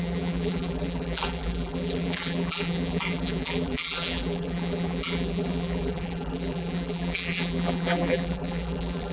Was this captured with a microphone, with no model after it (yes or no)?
no